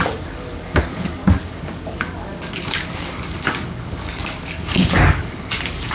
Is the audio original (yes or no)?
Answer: no